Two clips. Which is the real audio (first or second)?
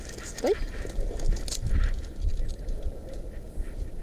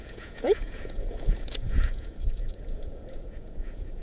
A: first